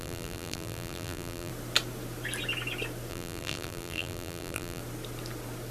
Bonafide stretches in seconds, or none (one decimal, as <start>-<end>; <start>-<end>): 1.5-3.1; 4.8-5.7